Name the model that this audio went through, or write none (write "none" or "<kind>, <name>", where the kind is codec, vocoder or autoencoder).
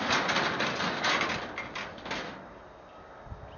none